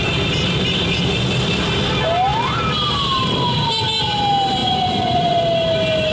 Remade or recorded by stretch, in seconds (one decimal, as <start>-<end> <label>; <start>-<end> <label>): 0.0-4.6 recorded; 4.6-5.4 remade; 5.4-6.1 recorded